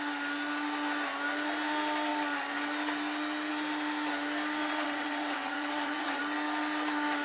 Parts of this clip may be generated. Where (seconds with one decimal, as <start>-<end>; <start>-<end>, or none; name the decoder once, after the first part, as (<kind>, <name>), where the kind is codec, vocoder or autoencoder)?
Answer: 4.6-6.2 (vocoder, WaveNeXt)